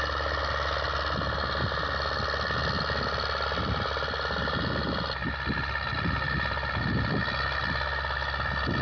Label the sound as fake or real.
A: real